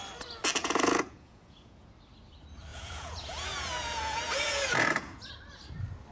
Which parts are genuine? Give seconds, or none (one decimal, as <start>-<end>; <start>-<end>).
0.0-0.6; 1.9-2.7; 5.3-6.1